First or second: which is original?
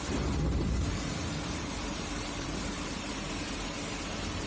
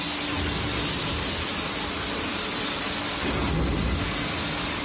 second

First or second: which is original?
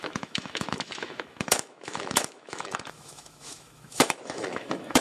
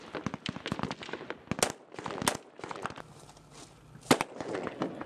second